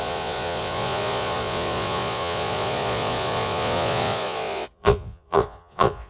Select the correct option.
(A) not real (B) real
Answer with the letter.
A